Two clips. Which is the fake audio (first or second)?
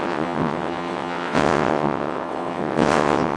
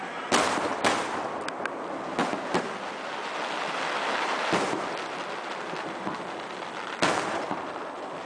first